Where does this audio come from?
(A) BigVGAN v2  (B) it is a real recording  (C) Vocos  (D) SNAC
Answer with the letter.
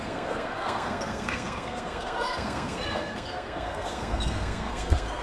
D